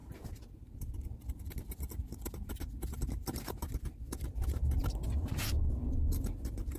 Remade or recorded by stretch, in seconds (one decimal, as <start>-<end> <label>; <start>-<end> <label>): 0.0-6.8 recorded